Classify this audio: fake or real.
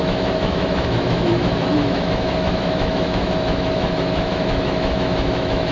fake